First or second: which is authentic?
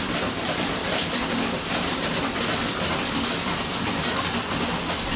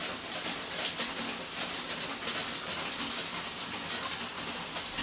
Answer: second